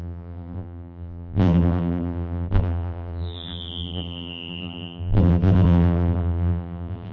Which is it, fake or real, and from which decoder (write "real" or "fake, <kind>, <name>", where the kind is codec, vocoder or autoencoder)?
fake, vocoder, BigVGAN v2